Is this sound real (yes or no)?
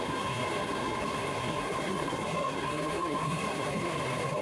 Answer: no